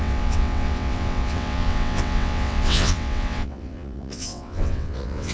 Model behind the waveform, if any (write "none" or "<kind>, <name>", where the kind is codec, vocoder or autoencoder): vocoder, WaveNeXt